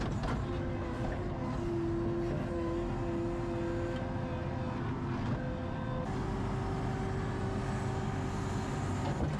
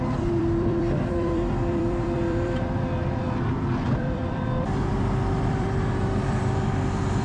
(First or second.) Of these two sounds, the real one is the first